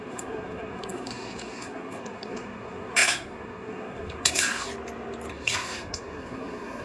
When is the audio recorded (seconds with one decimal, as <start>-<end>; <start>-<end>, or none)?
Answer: 4.7-5.3